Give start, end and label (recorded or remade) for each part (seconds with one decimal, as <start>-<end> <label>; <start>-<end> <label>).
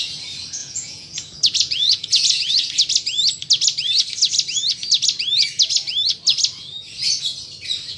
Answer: 0.0-0.6 recorded; 0.6-2.5 remade; 2.5-8.0 recorded